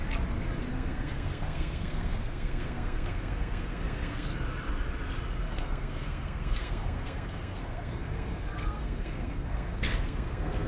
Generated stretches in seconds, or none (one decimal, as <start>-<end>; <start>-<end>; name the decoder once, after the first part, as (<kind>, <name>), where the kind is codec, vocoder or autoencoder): 0.7-4.3 (codec, SNAC); 5.5-10.7

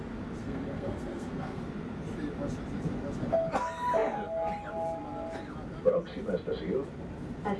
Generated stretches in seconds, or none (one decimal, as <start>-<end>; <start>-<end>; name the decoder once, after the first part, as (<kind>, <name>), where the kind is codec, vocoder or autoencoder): 0.4-1.6 (codec, SNAC)

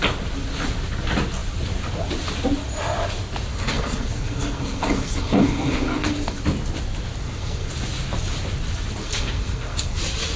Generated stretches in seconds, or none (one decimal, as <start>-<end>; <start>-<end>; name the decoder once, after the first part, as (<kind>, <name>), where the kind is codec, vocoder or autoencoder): 3.5-6.4 (codec, SNAC); 7.2-7.7; 9.0-10.0

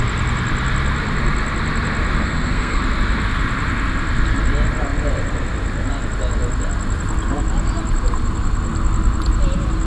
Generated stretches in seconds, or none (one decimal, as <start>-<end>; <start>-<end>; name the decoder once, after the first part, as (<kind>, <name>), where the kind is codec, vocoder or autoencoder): 2.2-2.8 (codec, SNAC)